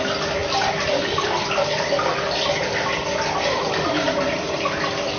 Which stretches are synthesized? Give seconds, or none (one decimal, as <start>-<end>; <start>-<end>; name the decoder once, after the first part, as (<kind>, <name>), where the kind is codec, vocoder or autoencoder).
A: none

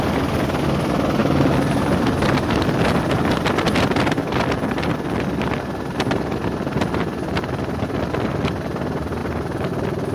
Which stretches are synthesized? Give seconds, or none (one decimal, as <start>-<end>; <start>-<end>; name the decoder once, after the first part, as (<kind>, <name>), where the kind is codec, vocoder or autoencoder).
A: none

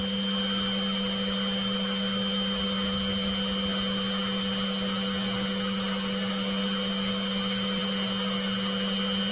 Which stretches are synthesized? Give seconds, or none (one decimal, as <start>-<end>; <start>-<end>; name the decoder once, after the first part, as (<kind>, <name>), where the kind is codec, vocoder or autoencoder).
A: none

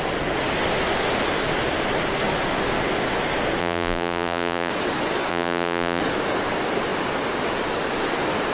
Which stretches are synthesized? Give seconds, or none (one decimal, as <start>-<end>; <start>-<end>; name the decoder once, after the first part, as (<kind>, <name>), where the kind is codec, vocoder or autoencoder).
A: 3.6-4.7 (vocoder, BigVGAN v2); 5.3-6.0

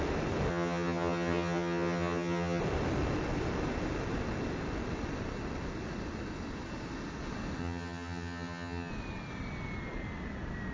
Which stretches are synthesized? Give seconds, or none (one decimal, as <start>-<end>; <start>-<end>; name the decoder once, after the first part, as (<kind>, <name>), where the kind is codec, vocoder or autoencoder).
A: 0.5-2.6 (vocoder, HiFi-GAN); 7.6-8.9

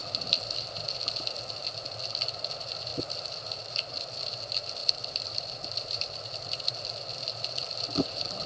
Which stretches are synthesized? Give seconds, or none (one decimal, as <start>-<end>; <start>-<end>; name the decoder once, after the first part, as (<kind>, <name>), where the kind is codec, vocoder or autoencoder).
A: 2.9-4.0 (vocoder, BigVGAN v2); 4.8-6.7; 7.7-8.5

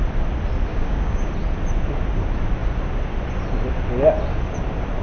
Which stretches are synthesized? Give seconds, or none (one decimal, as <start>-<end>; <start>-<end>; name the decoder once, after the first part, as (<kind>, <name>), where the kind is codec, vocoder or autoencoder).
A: 0.7-1.3 (codec, DAC)